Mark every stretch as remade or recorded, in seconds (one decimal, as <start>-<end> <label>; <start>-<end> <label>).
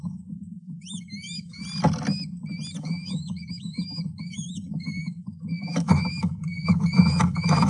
0.0-1.6 remade; 1.6-2.8 recorded; 2.8-7.7 remade